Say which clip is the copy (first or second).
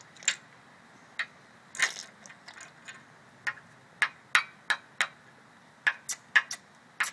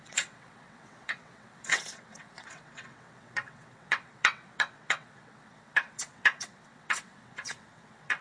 second